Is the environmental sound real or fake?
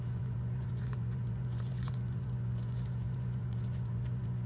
fake